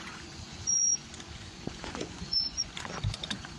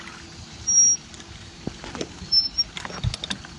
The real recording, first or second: second